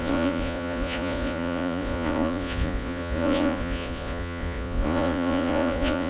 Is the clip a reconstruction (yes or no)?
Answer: yes